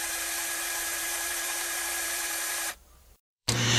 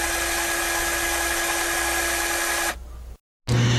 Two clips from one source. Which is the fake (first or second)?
first